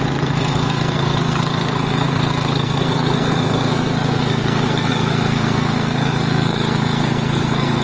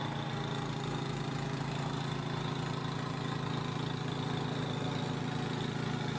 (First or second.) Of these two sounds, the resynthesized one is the first